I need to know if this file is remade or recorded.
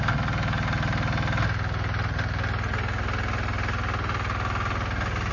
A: recorded